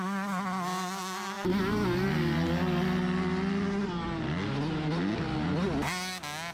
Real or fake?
real